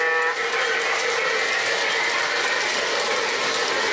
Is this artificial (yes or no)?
no